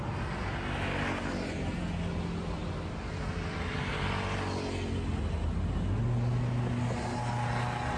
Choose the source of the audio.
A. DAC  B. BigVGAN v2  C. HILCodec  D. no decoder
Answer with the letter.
D